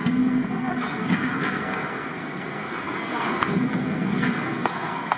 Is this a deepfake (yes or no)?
yes